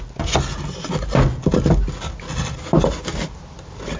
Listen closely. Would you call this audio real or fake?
real